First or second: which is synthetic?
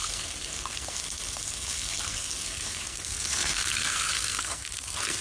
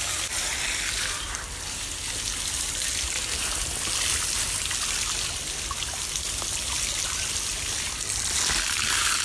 first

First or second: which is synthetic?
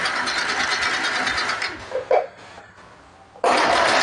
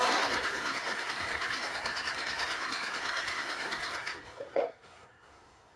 second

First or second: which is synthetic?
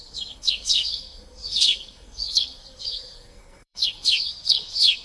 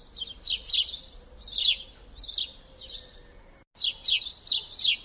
first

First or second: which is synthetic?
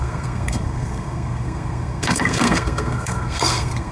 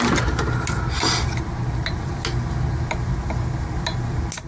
first